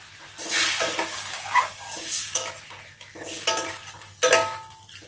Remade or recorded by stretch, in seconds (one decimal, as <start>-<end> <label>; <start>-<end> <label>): 0.0-1.1 recorded; 1.1-2.5 remade; 2.5-5.1 recorded